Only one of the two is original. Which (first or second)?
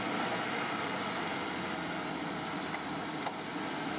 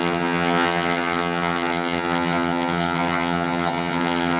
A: first